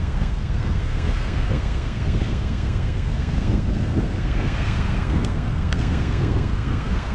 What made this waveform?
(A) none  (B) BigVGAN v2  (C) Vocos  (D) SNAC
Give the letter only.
D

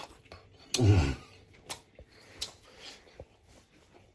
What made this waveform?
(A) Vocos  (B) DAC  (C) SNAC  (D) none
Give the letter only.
D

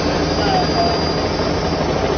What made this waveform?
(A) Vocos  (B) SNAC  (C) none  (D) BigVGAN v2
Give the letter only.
C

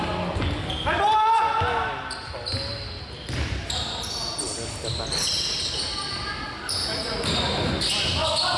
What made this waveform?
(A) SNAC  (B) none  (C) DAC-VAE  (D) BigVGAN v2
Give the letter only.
B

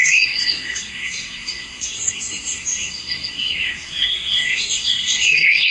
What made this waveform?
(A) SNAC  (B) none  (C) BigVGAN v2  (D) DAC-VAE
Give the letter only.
A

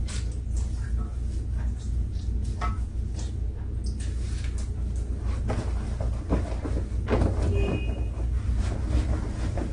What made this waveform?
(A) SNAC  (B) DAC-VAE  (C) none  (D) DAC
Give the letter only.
C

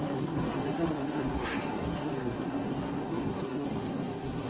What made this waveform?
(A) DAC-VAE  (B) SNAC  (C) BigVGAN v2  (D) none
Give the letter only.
B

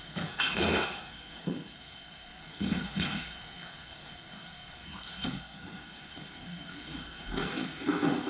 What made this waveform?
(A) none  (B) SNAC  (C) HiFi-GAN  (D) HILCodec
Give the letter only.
B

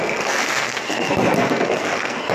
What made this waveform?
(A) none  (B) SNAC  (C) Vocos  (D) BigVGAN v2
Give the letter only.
B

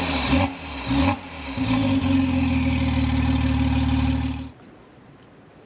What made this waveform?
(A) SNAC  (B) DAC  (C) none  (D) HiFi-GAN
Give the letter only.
C